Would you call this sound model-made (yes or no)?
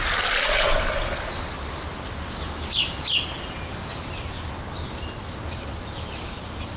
no